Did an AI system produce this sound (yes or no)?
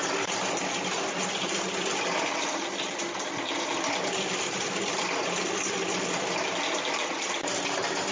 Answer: no